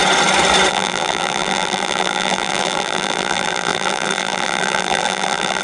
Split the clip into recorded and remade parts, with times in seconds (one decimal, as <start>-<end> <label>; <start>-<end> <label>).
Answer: 0.0-0.7 recorded; 0.7-5.6 remade